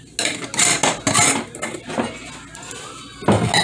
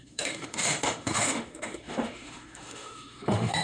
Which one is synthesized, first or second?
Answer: second